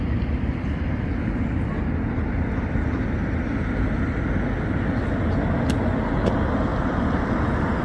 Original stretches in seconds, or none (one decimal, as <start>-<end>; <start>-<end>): 0.0-7.8